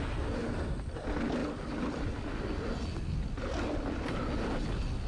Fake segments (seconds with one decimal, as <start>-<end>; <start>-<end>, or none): none